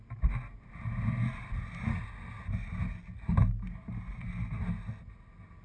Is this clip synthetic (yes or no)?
no